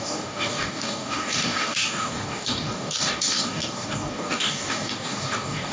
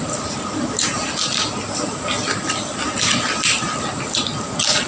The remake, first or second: first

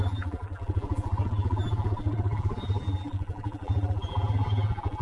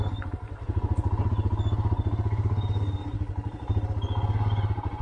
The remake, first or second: first